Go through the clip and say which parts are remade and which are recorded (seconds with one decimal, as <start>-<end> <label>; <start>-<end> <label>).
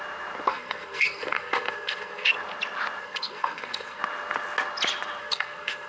0.0-0.5 recorded; 0.5-2.3 remade; 2.3-3.0 recorded; 3.0-4.0 remade; 4.0-5.2 recorded; 5.2-5.9 remade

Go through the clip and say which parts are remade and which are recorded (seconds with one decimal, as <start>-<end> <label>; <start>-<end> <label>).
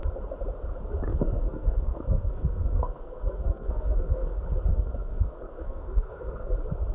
0.0-1.1 recorded; 1.1-4.3 remade; 4.3-4.7 recorded; 4.7-6.5 remade; 6.5-6.9 recorded